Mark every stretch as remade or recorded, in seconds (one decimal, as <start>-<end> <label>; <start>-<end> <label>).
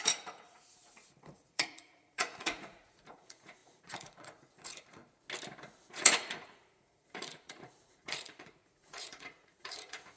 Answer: 0.0-5.0 remade; 5.0-5.9 recorded; 5.9-10.2 remade